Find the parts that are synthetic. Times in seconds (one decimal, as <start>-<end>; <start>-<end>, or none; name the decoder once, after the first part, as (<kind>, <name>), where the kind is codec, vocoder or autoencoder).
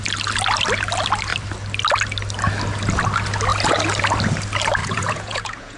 4.8-5.8 (vocoder, Vocos)